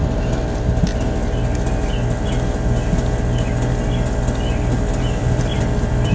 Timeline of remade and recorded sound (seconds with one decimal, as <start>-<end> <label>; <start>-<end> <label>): 0.0-5.2 recorded; 5.2-6.1 remade